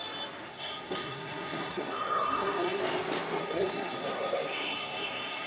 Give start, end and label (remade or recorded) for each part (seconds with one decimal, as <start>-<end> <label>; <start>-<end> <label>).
0.0-0.5 recorded; 0.5-2.8 remade; 2.8-3.4 recorded; 3.4-5.5 remade